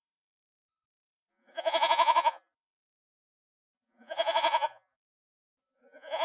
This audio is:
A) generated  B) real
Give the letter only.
A